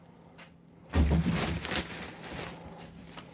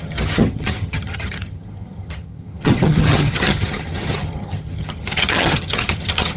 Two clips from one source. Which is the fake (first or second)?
second